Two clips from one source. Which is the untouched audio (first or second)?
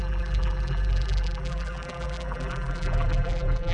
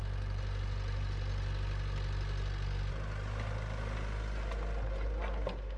second